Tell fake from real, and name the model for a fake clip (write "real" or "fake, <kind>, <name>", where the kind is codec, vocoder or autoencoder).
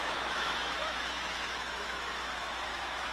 fake, autoencoder, DAC-VAE